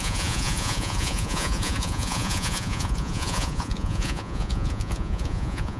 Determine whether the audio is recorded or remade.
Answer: remade